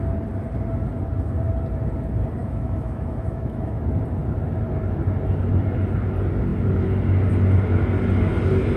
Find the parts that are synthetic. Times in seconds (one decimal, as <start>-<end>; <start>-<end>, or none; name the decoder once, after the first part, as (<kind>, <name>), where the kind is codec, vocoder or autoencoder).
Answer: 2.4-3.8 (autoencoder, DAC-VAE)